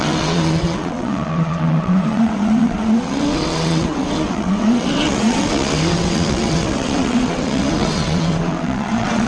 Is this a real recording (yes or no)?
no